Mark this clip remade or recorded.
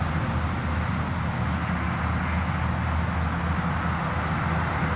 recorded